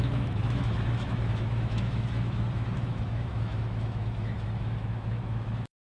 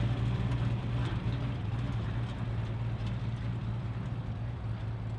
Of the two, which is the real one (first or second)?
second